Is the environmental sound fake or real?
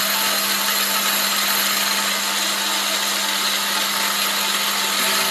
real